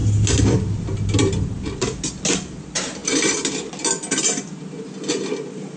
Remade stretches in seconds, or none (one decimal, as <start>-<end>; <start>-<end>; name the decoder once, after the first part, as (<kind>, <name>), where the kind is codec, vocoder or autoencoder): none